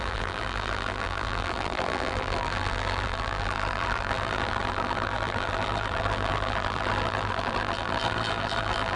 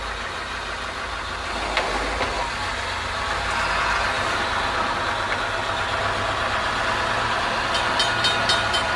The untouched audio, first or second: second